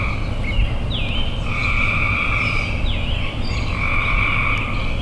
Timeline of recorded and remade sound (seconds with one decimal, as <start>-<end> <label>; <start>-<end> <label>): 0.0-5.0 recorded